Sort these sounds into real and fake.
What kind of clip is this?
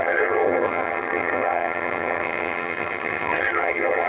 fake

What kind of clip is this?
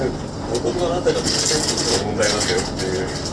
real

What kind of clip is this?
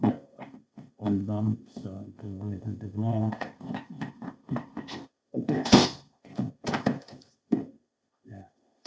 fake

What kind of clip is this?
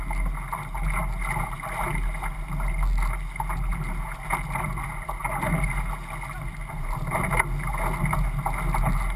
real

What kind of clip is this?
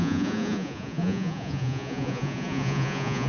fake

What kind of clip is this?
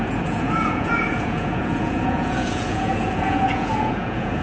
fake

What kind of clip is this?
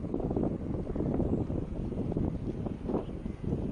real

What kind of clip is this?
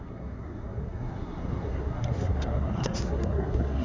fake